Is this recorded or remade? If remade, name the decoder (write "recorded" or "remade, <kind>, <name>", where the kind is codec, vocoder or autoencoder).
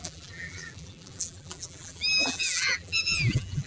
remade, vocoder, BigVGAN v2